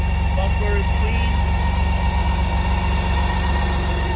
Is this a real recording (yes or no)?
yes